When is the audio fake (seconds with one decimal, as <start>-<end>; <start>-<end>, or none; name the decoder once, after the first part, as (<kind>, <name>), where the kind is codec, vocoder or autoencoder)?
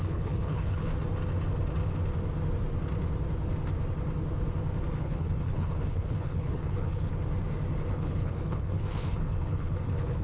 0.0-0.9 (codec, HILCodec); 5.0-7.1; 7.9-10.2